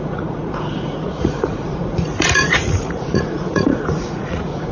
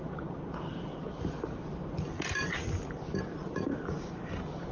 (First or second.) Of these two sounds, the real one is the second